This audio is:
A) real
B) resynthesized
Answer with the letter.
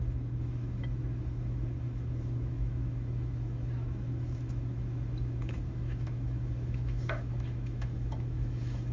B